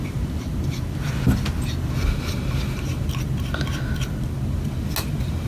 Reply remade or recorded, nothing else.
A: recorded